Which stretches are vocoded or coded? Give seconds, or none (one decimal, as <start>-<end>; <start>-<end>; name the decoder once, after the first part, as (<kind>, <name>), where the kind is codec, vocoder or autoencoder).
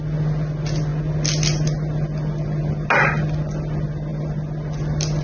none